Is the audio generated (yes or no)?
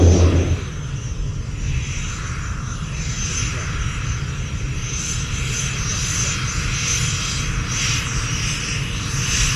no